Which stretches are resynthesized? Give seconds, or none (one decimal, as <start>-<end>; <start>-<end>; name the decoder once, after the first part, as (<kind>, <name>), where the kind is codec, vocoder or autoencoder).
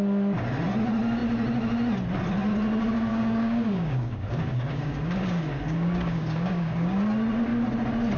3.1-7.0 (codec, DAC)